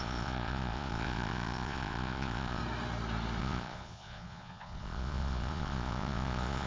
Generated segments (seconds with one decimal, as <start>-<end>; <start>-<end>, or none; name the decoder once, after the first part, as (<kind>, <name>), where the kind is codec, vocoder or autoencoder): 0.0-2.6 (vocoder, Vocos); 3.4-6.7